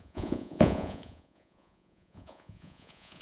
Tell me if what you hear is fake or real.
fake